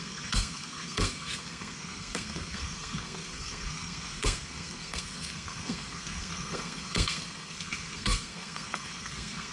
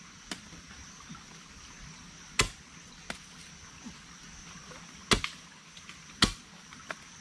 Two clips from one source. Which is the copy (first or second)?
first